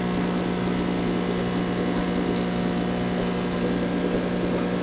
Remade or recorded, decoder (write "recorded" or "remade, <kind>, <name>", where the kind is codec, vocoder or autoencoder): recorded